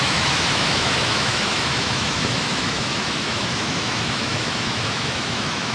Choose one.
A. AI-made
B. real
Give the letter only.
A